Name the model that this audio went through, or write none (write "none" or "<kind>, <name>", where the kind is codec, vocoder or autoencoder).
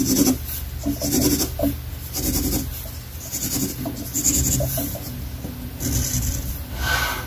none